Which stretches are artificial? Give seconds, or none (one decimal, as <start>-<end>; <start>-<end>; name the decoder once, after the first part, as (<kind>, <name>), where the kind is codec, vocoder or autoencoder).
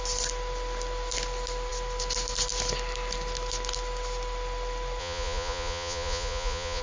5.0-6.8 (vocoder, Vocos)